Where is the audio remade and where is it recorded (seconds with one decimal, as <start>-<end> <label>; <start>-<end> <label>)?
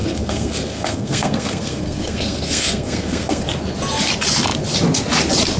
0.0-3.4 remade; 3.4-5.6 recorded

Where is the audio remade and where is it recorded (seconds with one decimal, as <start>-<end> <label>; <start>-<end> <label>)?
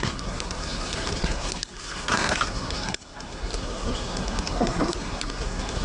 0.0-5.8 remade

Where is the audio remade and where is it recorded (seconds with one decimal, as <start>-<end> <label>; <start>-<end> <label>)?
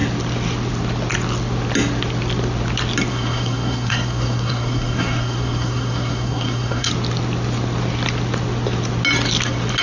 0.0-3.1 recorded; 3.1-6.9 remade; 6.9-9.8 recorded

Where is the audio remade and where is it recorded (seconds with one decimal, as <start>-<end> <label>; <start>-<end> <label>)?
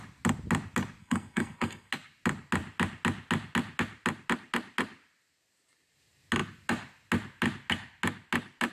0.0-1.0 recorded; 1.0-1.9 remade; 1.9-8.7 recorded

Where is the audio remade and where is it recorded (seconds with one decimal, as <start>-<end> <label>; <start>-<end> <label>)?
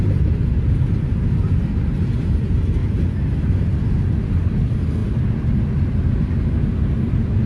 0.0-7.5 recorded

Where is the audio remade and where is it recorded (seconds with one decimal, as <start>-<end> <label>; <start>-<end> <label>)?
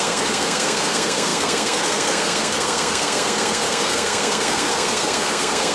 0.0-5.7 remade